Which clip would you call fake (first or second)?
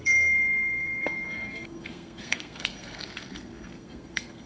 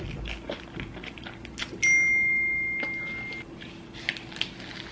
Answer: first